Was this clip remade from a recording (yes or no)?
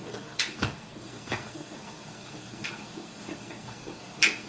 yes